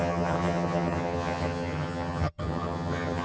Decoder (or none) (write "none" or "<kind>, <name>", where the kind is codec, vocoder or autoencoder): vocoder, HiFi-GAN